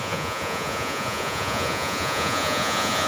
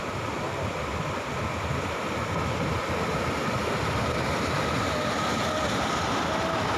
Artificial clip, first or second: first